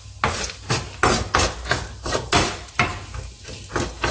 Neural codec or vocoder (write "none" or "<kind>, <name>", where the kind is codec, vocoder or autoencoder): none